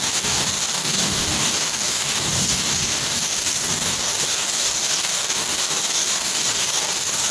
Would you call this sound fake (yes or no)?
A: yes